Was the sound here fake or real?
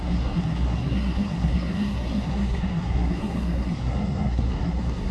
fake